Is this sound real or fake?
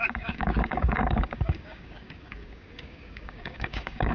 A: fake